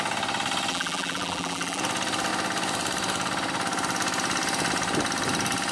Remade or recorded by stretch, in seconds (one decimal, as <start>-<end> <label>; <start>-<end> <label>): 0.0-0.7 recorded; 0.7-1.8 remade; 1.8-5.7 recorded

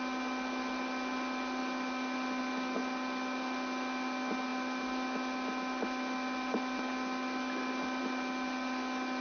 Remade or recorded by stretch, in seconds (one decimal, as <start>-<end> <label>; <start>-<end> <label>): 0.0-9.2 recorded

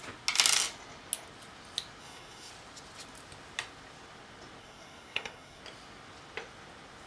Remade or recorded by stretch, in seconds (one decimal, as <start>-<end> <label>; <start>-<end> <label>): 0.0-2.0 recorded; 2.0-2.5 remade; 2.5-4.6 recorded; 4.6-5.6 remade; 5.6-7.1 recorded

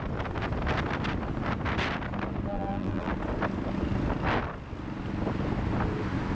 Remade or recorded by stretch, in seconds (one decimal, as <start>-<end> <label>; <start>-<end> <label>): 0.0-2.5 recorded; 2.5-3.1 remade; 3.1-6.3 recorded

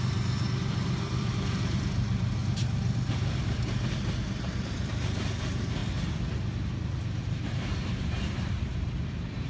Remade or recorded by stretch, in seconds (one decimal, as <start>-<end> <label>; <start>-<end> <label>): 0.0-5.8 remade; 5.8-7.2 recorded; 7.2-9.5 remade